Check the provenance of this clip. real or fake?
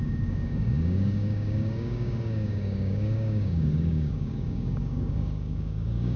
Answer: fake